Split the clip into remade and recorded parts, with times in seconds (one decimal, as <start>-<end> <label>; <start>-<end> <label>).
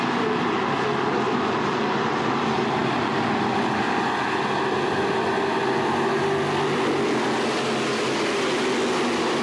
0.0-9.4 recorded